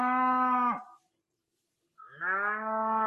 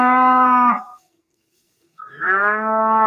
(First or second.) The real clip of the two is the first